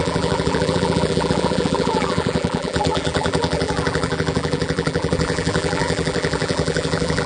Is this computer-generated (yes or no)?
yes